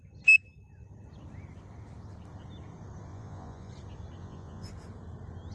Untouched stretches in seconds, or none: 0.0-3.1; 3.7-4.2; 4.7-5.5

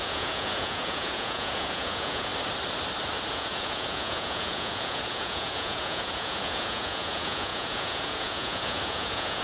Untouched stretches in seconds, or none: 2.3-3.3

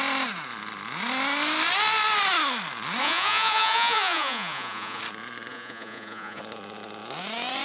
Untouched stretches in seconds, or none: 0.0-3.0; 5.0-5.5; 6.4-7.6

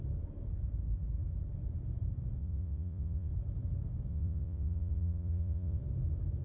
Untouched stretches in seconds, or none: 0.0-2.4; 3.3-4.1; 5.8-6.4

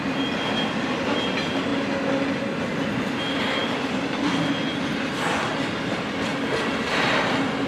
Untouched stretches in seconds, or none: 0.0-7.7